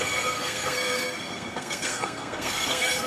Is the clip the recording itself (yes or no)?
no